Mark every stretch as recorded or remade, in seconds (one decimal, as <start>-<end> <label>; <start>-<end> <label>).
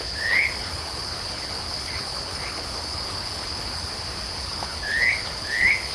0.0-3.9 remade; 3.9-4.4 recorded; 4.4-5.9 remade